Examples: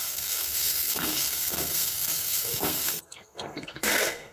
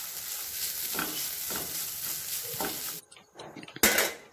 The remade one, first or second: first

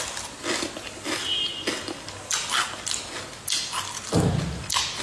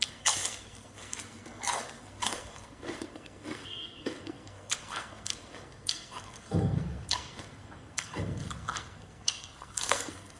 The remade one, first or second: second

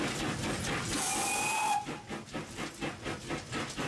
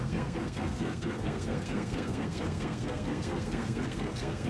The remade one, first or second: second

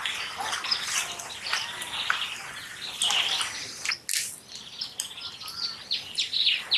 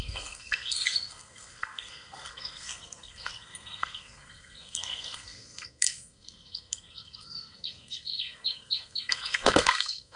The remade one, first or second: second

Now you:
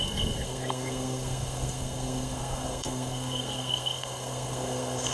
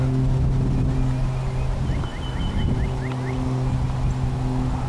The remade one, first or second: first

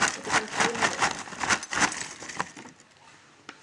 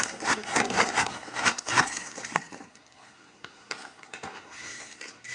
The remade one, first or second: second